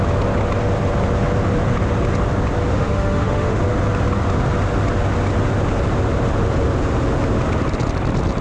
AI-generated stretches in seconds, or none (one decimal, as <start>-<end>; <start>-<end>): 2.7-3.6